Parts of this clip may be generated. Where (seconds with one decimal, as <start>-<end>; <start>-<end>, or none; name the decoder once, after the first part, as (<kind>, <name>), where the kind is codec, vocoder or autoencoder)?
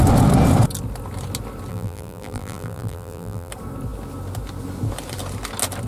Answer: 1.7-3.5 (vocoder, BigVGAN v2)